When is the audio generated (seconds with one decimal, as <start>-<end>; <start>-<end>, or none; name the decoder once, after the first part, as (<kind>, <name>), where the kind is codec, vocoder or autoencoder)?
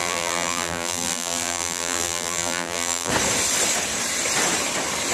0.0-3.1 (vocoder, BigVGAN v2)